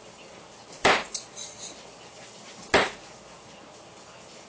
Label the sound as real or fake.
real